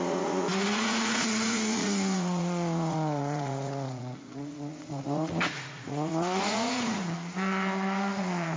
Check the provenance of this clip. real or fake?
fake